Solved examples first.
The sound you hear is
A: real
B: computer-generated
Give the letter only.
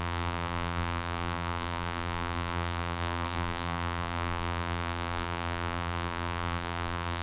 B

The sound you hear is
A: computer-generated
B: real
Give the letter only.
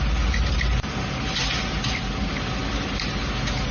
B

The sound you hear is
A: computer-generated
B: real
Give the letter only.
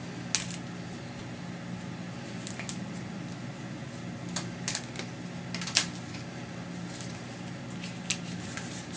B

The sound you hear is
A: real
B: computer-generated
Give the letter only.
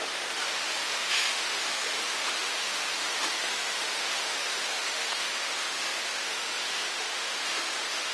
B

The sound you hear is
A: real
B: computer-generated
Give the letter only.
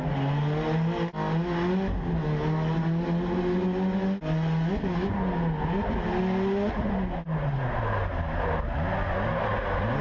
A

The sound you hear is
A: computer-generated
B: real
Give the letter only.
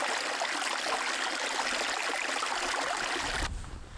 B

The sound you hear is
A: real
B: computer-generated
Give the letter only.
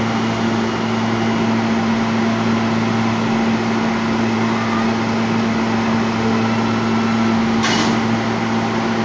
A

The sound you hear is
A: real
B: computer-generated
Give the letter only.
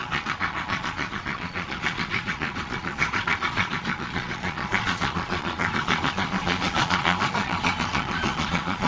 B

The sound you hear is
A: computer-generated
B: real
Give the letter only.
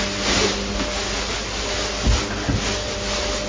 B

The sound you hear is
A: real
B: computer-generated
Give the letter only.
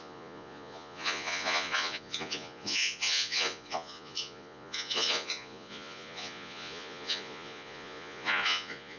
B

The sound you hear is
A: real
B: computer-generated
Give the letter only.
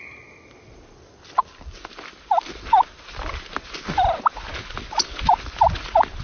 A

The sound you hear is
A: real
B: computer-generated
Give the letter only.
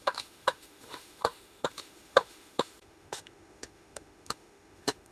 B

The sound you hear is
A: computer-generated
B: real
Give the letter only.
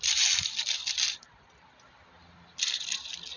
B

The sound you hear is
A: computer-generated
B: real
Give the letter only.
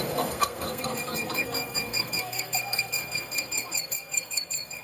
A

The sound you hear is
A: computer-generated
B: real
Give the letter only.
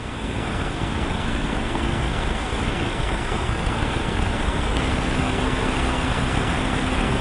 A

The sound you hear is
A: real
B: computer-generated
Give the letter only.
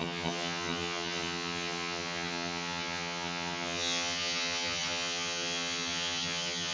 B